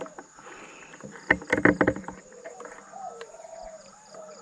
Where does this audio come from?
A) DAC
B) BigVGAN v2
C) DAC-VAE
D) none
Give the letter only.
B